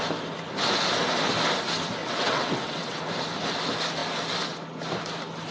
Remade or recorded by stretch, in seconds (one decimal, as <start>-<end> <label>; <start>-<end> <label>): 0.0-2.0 recorded; 2.0-3.0 remade; 3.0-5.5 recorded